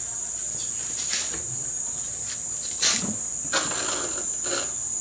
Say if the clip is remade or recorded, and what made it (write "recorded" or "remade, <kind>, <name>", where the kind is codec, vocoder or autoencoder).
recorded